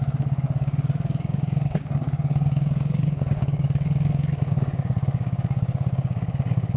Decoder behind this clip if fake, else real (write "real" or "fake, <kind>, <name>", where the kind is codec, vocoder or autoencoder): fake, codec, DAC